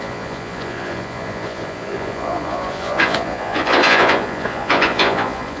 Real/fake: fake